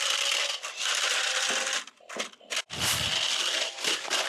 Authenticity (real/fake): real